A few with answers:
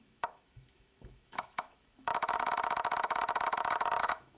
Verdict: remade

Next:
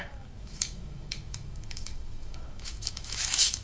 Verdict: remade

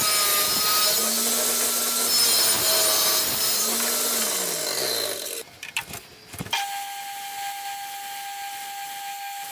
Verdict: recorded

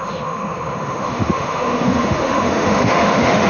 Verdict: remade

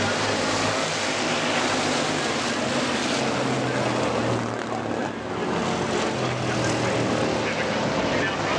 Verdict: recorded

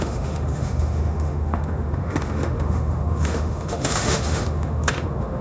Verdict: remade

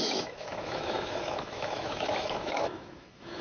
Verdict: remade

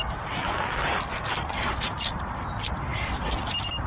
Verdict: recorded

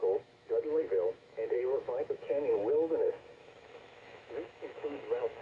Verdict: remade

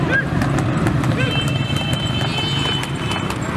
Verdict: recorded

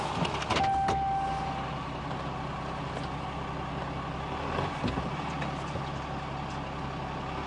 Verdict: recorded